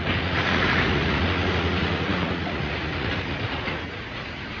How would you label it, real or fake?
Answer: fake